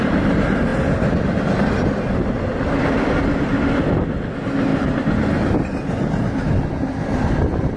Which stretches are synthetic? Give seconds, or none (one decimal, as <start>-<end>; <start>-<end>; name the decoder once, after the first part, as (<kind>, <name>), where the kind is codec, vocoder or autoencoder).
none